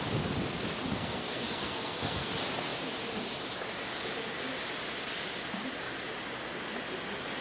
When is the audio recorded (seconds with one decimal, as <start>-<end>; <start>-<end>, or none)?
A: 0.0-0.9; 2.3-7.4